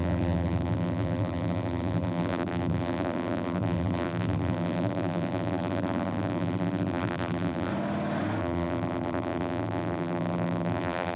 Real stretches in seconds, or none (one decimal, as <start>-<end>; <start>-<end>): 7.7-8.4